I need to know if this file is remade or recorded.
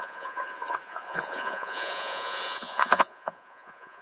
remade